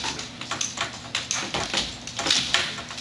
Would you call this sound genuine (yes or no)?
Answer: yes